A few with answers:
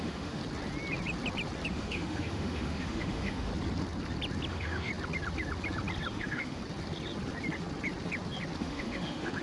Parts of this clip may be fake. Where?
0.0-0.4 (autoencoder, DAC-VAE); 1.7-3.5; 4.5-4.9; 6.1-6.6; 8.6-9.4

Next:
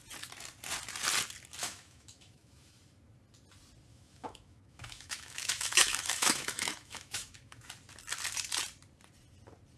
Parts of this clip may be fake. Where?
1.6-2.8 (autoencoder, DAC-VAE); 3.9-7.7

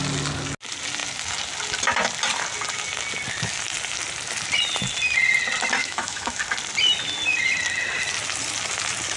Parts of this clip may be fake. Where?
5.8-6.4 (autoencoder, DAC-VAE)

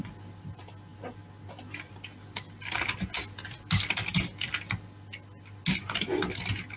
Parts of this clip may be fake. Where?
none